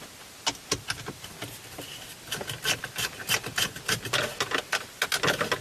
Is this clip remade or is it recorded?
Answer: recorded